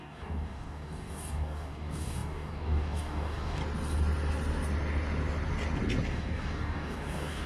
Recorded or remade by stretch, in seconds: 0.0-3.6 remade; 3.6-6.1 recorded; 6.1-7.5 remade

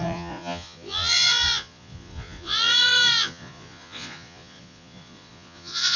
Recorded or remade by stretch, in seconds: 0.0-6.0 remade

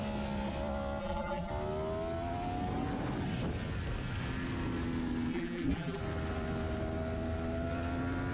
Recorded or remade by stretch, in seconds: 0.0-1.0 recorded; 1.0-1.5 remade; 1.5-5.3 recorded; 5.3-6.0 remade; 6.0-8.3 recorded

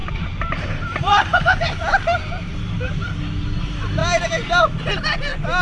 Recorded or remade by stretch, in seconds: 0.0-3.2 remade; 3.2-5.6 recorded

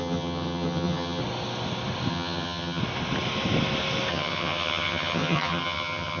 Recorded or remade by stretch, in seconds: 0.0-1.2 remade; 1.2-2.1 recorded; 2.1-2.8 remade; 2.8-4.1 recorded; 4.1-6.2 remade

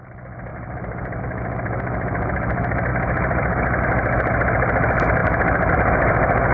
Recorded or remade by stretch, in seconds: 0.0-0.5 recorded; 0.5-1.2 remade; 1.2-2.9 recorded; 2.9-3.8 remade; 3.8-5.2 recorded; 5.2-5.7 remade; 5.7-6.5 recorded